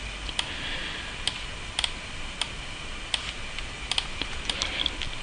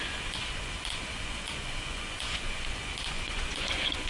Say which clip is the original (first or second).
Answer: first